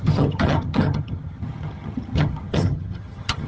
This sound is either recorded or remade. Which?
remade